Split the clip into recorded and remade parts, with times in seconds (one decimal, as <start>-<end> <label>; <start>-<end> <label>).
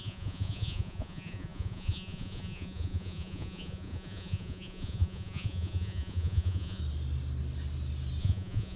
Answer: 0.0-6.8 remade; 6.8-8.2 recorded; 8.2-8.8 remade